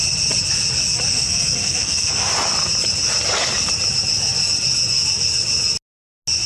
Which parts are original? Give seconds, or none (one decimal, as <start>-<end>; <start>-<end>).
0.0-1.1; 2.3-6.5